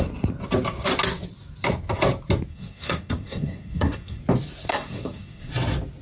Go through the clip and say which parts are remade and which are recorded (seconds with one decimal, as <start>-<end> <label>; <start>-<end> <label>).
0.0-2.5 recorded; 2.5-4.2 remade; 4.2-4.7 recorded; 4.7-5.5 remade; 5.5-6.0 recorded

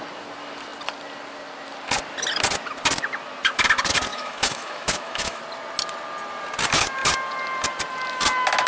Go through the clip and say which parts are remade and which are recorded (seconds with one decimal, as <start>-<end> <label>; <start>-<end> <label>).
0.0-4.1 recorded; 4.1-5.4 remade; 5.4-8.7 recorded

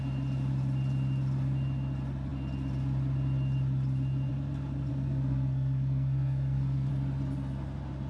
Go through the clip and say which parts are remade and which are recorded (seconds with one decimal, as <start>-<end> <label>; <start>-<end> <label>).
0.0-4.9 recorded; 4.9-6.9 remade; 6.9-8.1 recorded

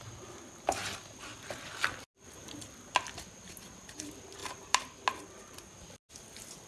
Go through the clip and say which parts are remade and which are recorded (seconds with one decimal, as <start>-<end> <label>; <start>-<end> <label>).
0.0-6.7 recorded

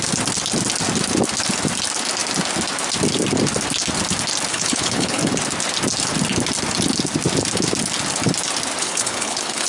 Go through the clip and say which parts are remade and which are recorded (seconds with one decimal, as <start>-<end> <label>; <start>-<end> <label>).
0.0-4.5 recorded; 4.5-5.2 remade; 5.2-8.8 recorded; 8.8-9.7 remade

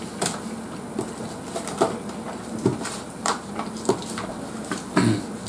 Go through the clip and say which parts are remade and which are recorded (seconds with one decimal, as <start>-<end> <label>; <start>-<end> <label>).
0.0-2.7 recorded; 2.7-3.5 remade; 3.5-5.5 recorded